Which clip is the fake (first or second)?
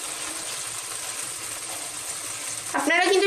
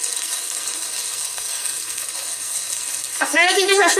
second